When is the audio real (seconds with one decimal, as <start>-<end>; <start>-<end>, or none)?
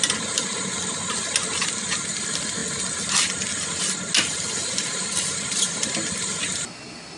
0.0-7.2